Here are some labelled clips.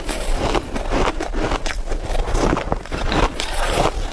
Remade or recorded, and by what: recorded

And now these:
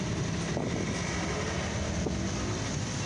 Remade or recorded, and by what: recorded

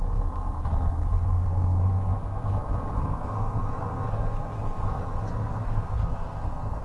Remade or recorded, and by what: remade, codec, SNAC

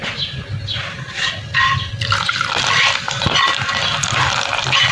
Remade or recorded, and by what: recorded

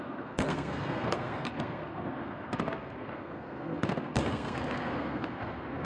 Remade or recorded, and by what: remade, codec, SNAC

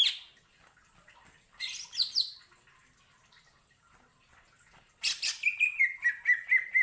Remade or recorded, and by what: recorded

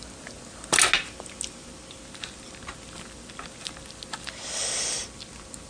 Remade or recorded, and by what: recorded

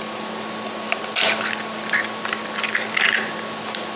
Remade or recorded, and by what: recorded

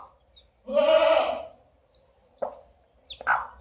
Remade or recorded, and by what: recorded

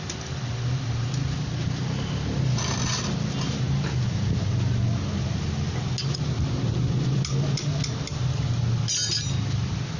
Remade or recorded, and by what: recorded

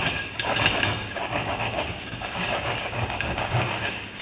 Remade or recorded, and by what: remade, codec, DAC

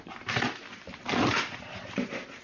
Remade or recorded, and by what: recorded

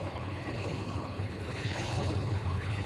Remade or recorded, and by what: remade, codec, HILCodec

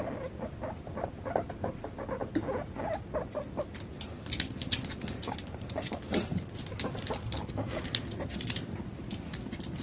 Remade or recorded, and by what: recorded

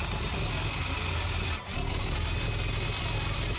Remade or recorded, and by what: recorded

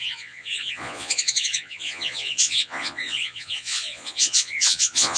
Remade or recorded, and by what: remade, vocoder, Vocos